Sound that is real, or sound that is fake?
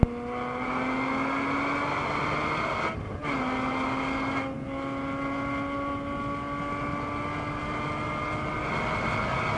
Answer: real